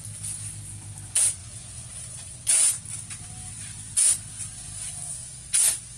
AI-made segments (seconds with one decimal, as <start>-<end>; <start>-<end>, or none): 1.4-2.7; 5.1-6.0